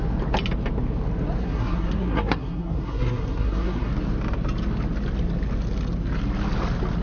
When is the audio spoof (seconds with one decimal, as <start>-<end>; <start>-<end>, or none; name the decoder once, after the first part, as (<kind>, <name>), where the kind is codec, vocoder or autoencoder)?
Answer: 1.4-3.9 (codec, SNAC)